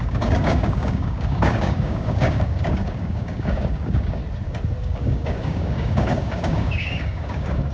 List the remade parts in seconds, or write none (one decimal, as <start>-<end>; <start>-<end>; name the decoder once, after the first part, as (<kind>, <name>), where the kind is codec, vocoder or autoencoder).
0.0-4.2 (codec, DAC); 4.8-7.7